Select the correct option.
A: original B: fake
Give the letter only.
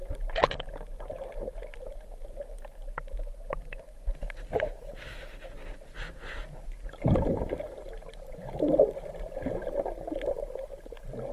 A